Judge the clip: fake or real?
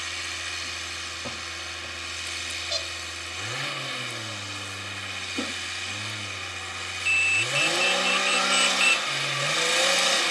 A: real